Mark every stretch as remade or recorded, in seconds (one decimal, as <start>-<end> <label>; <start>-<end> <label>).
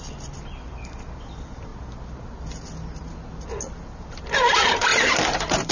0.0-1.7 remade; 1.7-4.3 recorded; 4.3-5.7 remade